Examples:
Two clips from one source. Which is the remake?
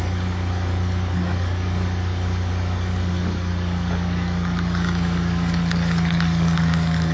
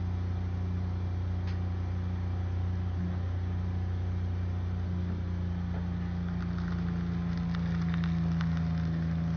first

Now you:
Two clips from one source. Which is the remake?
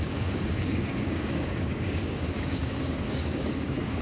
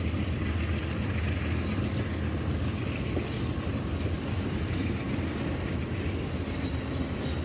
first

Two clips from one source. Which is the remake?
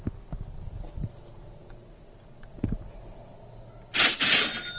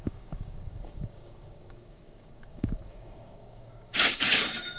second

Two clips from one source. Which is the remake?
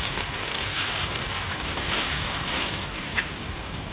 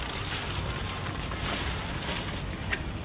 first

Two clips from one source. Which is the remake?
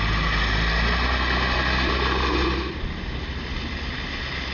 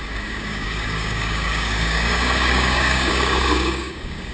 second